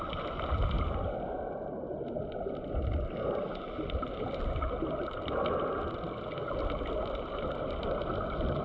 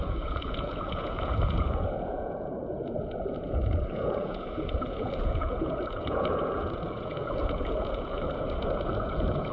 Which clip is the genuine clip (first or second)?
first